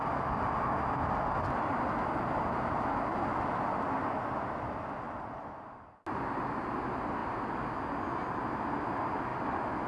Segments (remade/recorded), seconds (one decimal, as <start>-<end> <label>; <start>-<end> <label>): 0.0-9.9 recorded